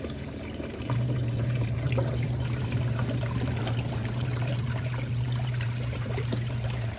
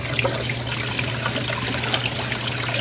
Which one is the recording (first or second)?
second